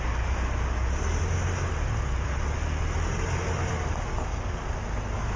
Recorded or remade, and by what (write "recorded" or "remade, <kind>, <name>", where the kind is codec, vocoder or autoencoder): recorded